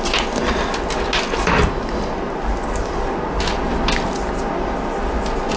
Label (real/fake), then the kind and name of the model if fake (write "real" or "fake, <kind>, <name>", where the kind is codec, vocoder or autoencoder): real